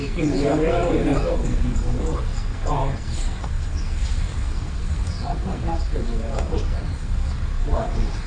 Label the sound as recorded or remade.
remade